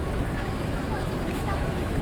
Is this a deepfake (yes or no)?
yes